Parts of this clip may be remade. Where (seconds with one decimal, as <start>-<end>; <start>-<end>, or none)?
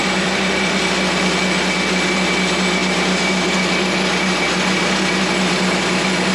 0.0-0.8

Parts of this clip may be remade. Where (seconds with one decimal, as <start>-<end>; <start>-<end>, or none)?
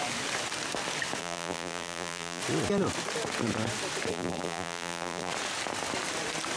1.2-2.4; 4.1-5.3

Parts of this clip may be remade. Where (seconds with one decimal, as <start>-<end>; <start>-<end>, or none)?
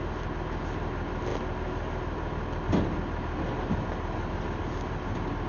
none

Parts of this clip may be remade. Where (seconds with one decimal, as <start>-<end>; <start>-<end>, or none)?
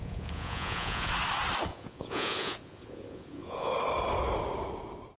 0.0-1.1; 1.7-3.7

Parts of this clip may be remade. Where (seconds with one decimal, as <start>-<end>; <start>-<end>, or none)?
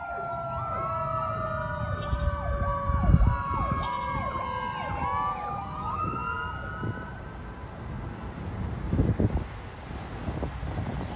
none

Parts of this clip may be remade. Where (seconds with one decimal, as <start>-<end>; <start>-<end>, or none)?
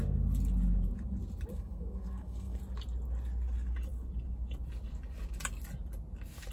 1.5-2.6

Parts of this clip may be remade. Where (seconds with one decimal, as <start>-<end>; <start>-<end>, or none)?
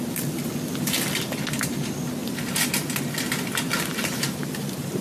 none